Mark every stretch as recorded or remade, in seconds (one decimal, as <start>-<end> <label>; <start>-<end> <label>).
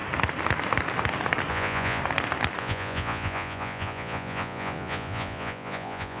0.0-1.5 recorded; 1.5-2.0 remade; 2.0-2.6 recorded; 2.6-6.2 remade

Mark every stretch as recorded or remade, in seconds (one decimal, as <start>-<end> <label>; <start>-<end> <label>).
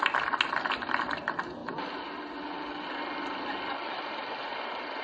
0.0-5.0 recorded